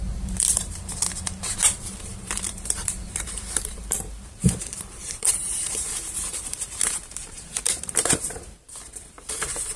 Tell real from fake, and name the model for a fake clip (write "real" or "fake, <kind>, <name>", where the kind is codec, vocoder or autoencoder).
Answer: fake, vocoder, BigVGAN v2